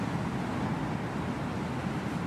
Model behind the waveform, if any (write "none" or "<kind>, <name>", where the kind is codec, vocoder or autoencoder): none